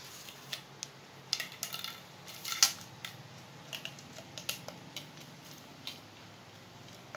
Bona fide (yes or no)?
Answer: yes